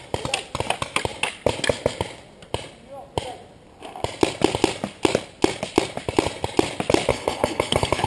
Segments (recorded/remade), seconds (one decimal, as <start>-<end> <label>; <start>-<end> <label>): 0.0-7.1 recorded; 7.1-8.1 remade